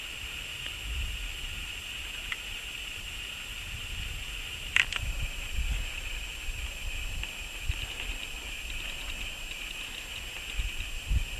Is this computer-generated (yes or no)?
no